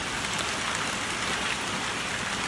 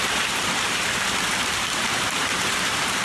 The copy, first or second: second